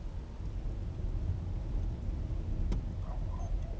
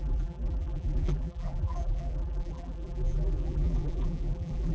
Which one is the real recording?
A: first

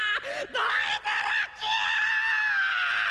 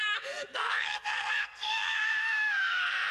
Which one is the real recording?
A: first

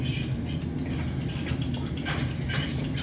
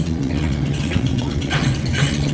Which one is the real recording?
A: first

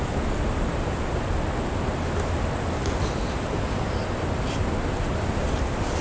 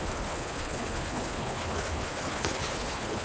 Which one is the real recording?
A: first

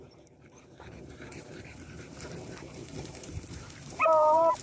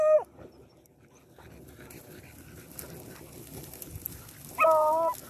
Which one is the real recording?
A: second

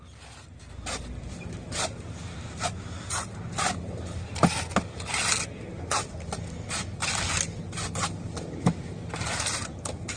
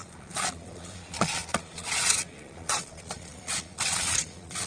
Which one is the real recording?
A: first